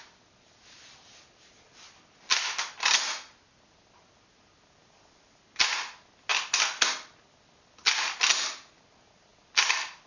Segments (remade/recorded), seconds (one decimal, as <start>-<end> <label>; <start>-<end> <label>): 0.0-10.1 recorded